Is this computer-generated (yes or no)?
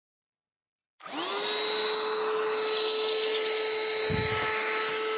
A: no